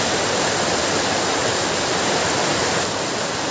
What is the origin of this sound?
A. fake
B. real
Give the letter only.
B